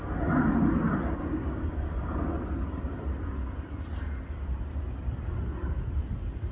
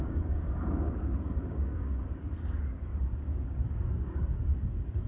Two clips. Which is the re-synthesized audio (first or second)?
second